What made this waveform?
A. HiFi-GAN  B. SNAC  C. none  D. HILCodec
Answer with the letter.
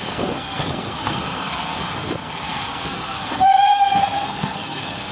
B